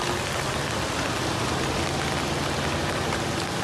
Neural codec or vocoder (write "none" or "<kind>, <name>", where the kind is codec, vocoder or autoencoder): none